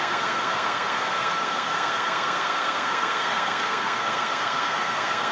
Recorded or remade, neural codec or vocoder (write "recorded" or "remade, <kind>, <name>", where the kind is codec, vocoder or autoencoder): remade, codec, SNAC